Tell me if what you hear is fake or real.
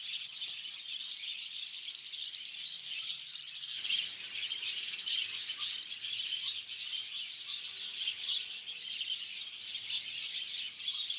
real